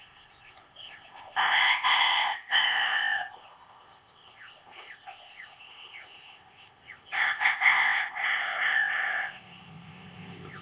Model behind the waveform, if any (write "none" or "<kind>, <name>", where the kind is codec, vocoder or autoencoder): codec, ZipCodec